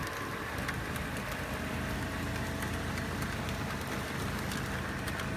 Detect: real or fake real